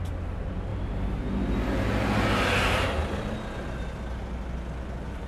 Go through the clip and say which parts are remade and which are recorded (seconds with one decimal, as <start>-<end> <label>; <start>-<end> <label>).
0.0-0.7 recorded; 0.7-1.2 remade; 1.2-5.3 recorded